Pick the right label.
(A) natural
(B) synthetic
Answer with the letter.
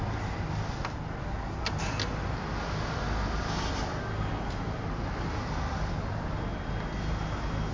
A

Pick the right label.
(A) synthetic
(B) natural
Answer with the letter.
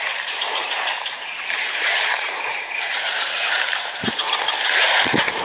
A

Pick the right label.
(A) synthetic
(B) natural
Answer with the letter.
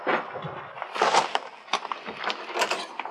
B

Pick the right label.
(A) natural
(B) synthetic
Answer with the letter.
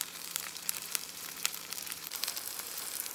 B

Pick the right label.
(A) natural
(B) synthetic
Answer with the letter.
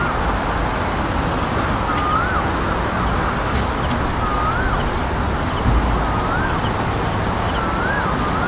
A